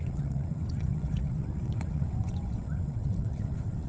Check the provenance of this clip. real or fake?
fake